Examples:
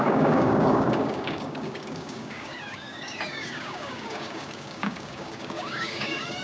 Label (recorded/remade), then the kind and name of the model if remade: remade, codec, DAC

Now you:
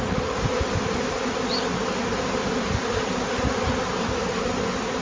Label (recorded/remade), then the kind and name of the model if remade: recorded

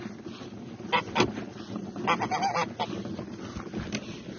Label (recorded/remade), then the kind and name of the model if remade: recorded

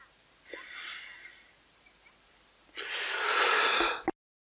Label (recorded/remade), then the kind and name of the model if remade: recorded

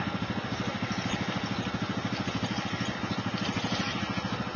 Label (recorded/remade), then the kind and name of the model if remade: recorded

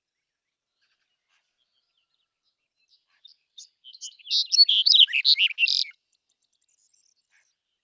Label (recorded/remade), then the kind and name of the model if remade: recorded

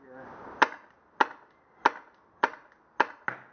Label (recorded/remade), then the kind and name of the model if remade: recorded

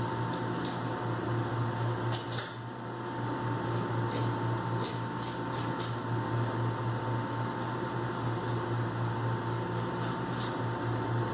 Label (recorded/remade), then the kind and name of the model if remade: recorded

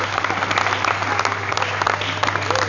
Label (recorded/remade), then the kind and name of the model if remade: recorded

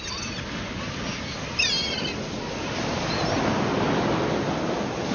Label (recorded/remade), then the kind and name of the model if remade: recorded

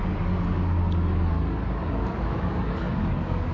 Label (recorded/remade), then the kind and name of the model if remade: remade, codec, DAC